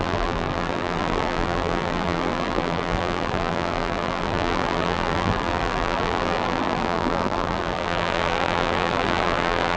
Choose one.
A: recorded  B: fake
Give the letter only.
B